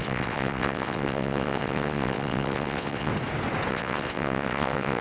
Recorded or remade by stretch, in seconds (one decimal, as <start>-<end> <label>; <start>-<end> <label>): 0.0-3.1 remade; 3.1-3.7 recorded; 3.7-5.0 remade